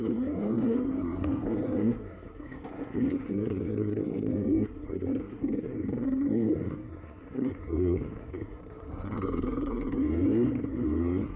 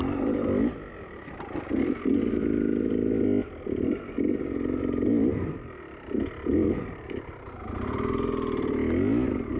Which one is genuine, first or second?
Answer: second